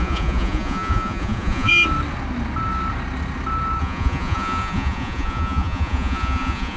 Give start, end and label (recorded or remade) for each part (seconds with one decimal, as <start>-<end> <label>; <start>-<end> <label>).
0.0-1.7 remade; 1.7-3.8 recorded; 3.8-6.8 remade